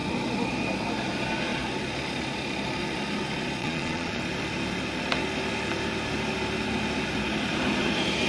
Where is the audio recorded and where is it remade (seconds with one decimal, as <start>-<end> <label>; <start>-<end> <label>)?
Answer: 0.0-3.6 recorded; 3.6-4.2 remade; 4.2-8.3 recorded